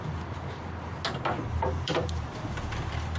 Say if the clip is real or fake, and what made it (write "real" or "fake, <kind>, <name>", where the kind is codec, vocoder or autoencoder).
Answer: real